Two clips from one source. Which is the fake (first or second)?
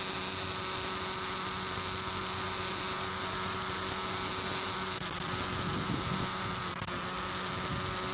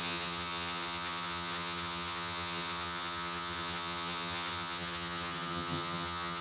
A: second